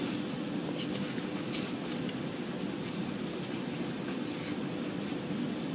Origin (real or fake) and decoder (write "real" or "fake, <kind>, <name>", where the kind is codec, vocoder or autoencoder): real